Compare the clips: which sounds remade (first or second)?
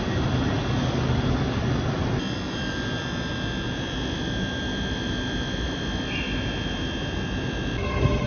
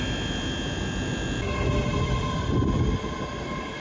first